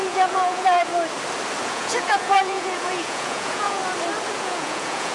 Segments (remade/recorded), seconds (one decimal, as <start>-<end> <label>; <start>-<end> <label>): 0.0-0.9 remade; 0.9-1.6 recorded; 1.6-3.8 remade; 3.8-4.3 recorded; 4.3-5.1 remade